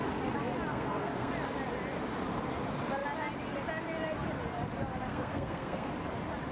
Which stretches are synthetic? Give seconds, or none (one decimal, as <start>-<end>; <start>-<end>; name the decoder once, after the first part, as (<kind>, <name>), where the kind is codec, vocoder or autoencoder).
0.7-1.3 (codec, SNAC); 5.1-5.9